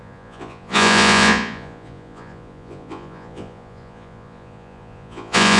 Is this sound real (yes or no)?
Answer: no